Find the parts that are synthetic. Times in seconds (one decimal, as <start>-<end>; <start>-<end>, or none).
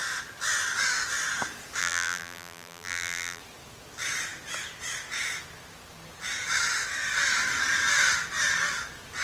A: 1.8-3.4